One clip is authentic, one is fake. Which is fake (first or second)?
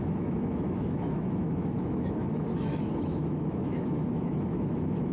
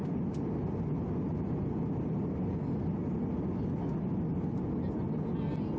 first